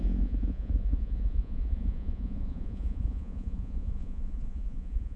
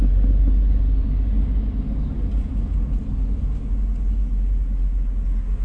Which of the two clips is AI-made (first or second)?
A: first